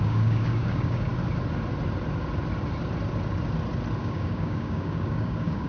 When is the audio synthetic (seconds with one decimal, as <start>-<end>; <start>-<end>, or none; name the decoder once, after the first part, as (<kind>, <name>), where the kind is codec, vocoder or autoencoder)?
0.0-1.1 (codec, DAC); 4.0-5.7